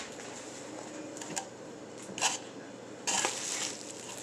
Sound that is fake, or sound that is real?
real